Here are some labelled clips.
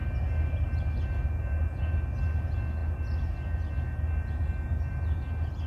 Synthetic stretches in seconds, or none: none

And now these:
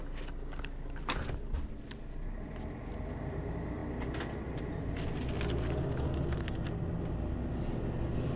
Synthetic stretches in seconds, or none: none

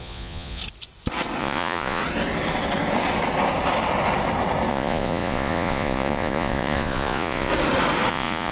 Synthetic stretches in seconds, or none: 0.0-0.6 (vocoder, Vocos); 1.4-2.0; 4.7-7.5; 8.1-8.5